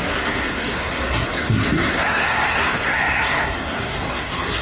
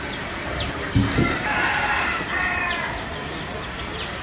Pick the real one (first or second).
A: second